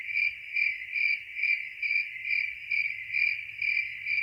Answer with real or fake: real